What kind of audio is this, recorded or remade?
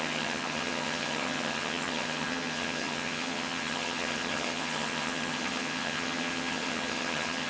remade